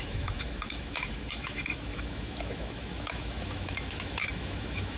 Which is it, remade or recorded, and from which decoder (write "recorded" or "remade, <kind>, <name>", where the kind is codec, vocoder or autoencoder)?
remade, autoencoder, DAC-VAE